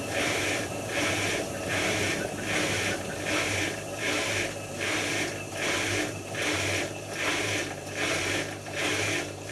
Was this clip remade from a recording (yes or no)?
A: yes